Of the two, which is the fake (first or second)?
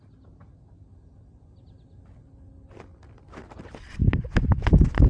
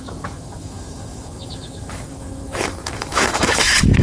second